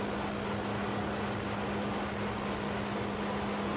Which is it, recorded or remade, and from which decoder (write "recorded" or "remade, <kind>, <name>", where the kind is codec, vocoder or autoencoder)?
recorded